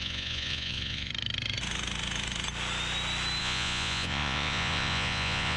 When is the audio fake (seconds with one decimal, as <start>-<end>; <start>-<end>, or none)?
0.0-1.1; 3.4-5.6